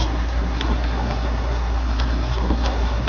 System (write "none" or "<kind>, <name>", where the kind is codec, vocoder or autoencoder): codec, SNAC